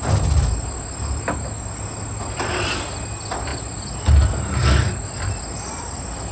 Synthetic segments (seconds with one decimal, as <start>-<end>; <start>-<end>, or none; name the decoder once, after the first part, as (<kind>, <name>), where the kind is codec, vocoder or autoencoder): none